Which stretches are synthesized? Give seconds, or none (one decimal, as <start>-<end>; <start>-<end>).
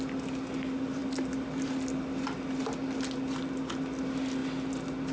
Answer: none